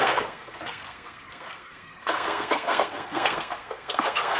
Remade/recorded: remade